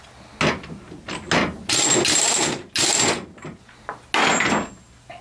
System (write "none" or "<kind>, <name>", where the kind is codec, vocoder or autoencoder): none